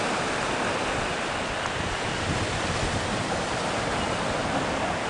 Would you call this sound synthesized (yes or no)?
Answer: no